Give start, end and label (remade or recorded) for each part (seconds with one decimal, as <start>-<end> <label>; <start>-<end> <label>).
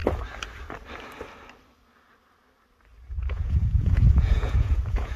0.0-3.1 recorded; 3.1-5.2 remade